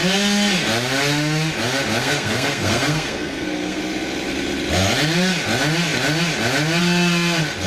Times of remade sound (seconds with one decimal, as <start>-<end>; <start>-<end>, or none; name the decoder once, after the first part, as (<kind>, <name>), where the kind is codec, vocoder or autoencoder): 2.0-3.8 (codec, SNAC)